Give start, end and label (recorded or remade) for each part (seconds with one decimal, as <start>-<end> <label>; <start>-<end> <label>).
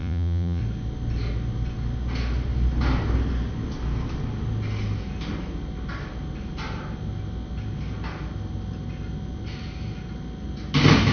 0.0-0.6 remade; 0.6-11.1 recorded